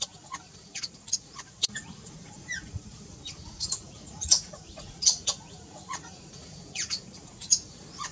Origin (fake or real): fake